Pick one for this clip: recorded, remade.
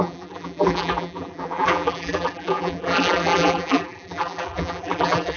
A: remade